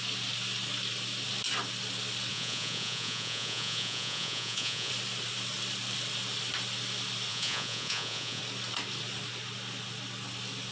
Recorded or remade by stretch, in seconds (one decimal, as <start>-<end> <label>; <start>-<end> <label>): 0.0-2.3 recorded; 2.3-4.9 remade; 4.9-7.3 recorded; 7.3-8.4 remade; 8.4-10.7 recorded